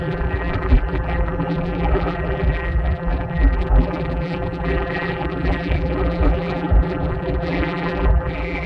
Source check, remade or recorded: remade